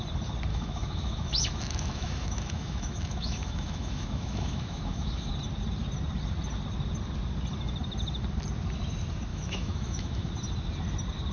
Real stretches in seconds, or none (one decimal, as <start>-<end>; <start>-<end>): 0.0-0.5; 5.3-9.3; 10.3-11.3